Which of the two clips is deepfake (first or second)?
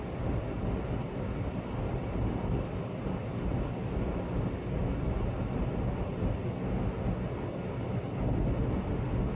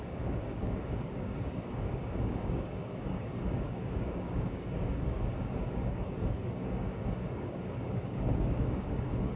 second